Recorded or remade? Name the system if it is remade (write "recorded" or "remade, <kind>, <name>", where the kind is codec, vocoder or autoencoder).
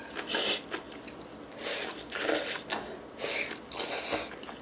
recorded